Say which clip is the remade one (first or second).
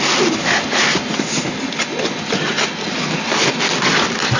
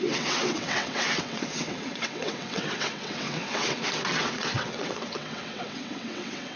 second